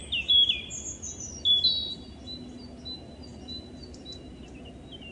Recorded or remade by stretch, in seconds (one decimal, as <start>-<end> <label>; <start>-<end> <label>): 0.0-5.1 recorded

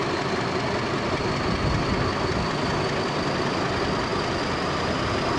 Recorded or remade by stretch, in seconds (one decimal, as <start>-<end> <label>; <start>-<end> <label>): 0.0-5.4 recorded